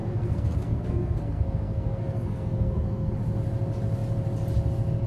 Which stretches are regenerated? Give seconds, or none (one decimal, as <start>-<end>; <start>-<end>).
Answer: 0.0-3.1